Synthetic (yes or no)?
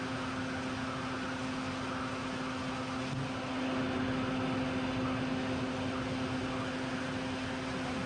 no